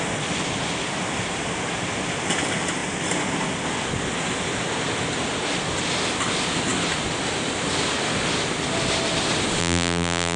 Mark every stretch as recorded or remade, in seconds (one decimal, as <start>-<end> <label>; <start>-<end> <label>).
0.0-9.6 recorded; 9.6-10.4 remade